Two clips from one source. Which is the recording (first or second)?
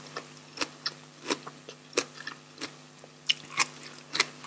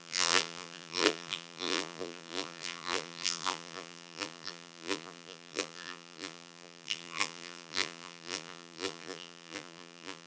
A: first